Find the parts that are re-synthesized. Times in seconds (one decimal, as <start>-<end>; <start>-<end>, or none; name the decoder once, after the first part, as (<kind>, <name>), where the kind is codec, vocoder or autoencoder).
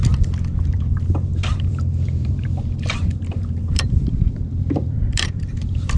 0.6-6.0 (vocoder, BigVGAN v2)